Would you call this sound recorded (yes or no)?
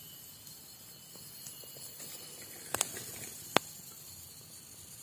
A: yes